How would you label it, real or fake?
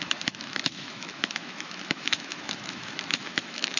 fake